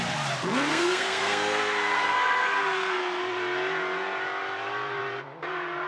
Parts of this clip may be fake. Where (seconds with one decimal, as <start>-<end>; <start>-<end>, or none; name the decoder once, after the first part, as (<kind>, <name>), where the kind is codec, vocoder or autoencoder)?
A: 0.7-3.2 (codec, SNAC)